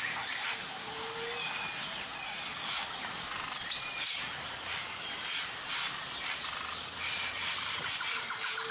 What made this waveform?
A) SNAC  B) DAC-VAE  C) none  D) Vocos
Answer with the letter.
C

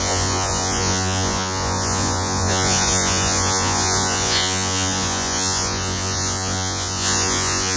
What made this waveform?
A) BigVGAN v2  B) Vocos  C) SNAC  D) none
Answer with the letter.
B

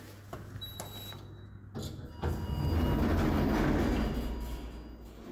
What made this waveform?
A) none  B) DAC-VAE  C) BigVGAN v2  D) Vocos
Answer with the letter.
A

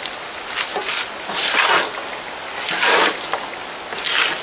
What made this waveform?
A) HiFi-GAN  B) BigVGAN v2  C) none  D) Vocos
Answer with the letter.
C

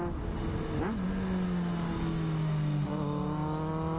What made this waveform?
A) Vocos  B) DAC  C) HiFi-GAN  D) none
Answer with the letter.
D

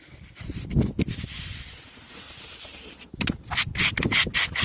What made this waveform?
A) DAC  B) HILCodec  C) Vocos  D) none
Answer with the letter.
D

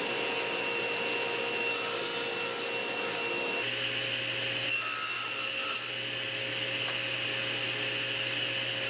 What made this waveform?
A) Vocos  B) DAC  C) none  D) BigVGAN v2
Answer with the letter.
C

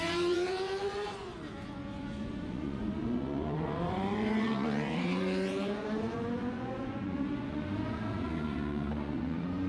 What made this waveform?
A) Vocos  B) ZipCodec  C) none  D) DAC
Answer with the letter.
A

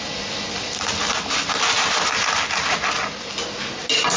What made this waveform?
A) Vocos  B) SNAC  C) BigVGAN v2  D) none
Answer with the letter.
D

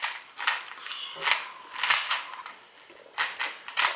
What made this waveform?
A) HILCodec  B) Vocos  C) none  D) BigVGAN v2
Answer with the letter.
C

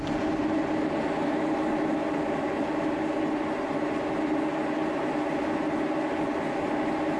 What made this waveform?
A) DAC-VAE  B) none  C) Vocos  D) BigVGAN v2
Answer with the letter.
B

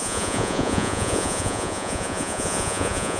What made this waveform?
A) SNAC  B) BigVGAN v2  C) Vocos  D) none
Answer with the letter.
C